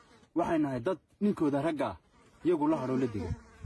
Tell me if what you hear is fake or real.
real